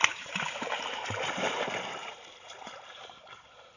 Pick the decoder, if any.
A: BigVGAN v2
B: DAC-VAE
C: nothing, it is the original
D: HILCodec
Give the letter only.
A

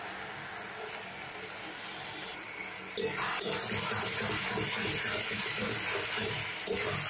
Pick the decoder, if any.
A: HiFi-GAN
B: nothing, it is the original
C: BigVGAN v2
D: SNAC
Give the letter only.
B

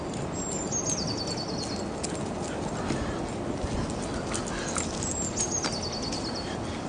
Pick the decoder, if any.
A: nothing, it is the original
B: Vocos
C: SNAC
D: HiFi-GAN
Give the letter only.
A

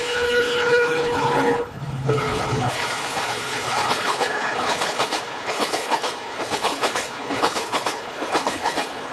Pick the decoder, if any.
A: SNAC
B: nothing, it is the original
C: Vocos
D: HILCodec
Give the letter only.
D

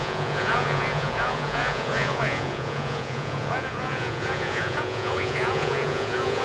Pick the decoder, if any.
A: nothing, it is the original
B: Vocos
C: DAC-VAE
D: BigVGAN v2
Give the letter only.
B